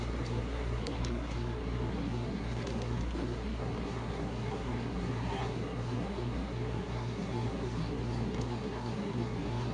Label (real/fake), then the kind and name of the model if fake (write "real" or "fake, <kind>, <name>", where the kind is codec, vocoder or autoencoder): fake, codec, SNAC